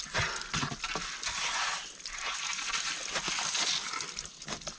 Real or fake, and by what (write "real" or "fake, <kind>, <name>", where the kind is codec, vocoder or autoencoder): real